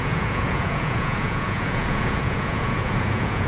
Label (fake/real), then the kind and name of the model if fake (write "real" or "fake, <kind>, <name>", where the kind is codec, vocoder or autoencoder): fake, vocoder, Vocos